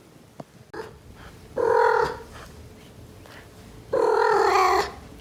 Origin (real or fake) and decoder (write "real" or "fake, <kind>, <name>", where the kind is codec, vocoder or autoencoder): real